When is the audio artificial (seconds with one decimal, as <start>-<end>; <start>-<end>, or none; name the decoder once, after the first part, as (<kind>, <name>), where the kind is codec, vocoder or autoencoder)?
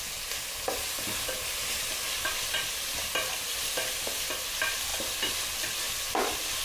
none